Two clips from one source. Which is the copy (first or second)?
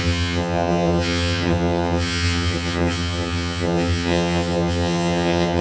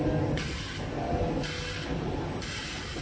first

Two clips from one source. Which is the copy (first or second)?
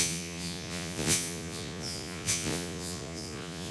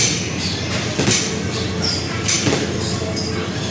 first